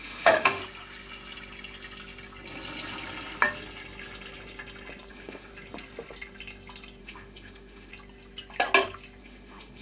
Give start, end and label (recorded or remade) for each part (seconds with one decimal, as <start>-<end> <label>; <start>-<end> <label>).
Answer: 0.0-0.6 remade; 0.6-5.1 recorded; 5.1-5.5 remade; 5.5-7.0 recorded; 7.0-7.9 remade; 7.9-9.2 recorded; 9.2-9.8 remade